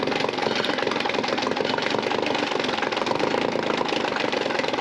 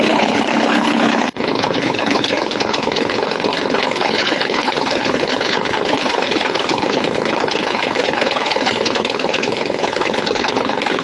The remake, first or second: second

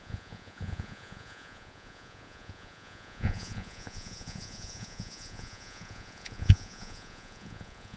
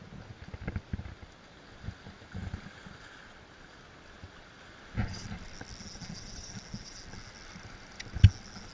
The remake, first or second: first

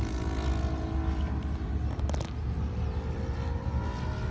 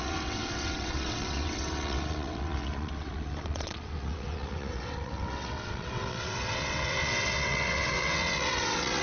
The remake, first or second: second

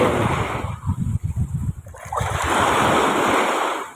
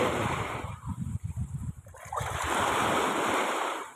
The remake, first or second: second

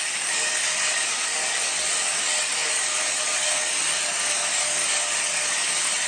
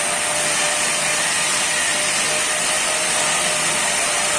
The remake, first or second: first